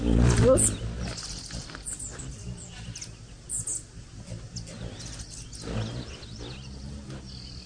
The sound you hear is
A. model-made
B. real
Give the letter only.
B